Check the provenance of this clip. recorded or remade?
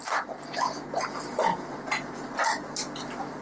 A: recorded